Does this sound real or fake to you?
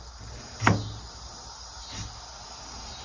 real